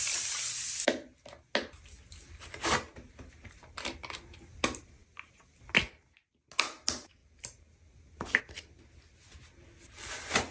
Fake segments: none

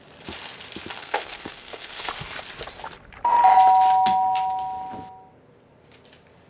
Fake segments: 1.0-2.1

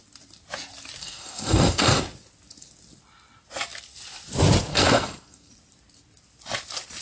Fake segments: 1.0-2.0; 4.7-5.5

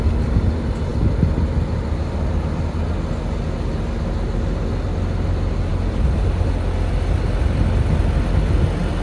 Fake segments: none

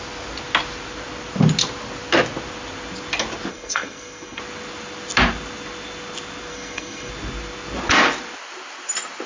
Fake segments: 3.5-4.4; 6.5-7.1

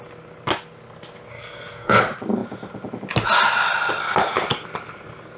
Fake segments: 1.3-2.0